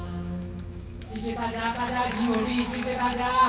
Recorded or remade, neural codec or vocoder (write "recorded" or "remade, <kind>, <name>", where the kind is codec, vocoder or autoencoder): remade, autoencoder, DAC-VAE